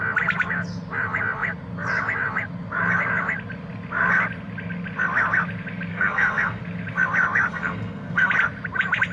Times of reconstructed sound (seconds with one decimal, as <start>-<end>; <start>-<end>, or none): 5.9-6.6; 7.5-8.3